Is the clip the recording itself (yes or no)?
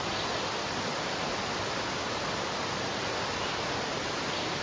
yes